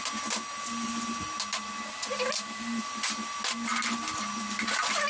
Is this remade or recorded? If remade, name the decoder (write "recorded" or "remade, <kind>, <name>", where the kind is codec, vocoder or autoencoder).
recorded